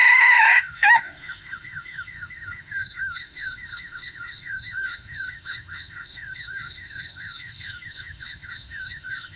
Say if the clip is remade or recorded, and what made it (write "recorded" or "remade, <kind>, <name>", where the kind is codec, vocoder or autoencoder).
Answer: remade, autoencoder, DAC-VAE